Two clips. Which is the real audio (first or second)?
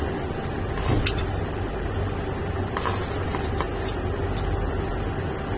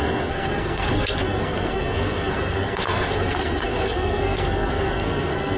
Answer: first